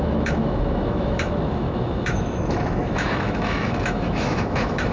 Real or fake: fake